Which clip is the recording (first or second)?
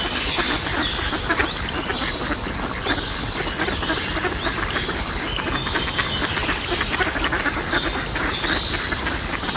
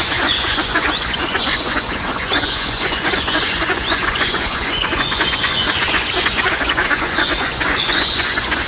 first